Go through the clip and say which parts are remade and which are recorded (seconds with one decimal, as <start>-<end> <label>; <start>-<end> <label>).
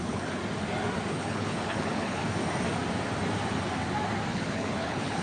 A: 0.0-0.4 remade; 0.4-1.1 recorded; 1.1-2.2 remade; 2.2-4.3 recorded; 4.3-5.2 remade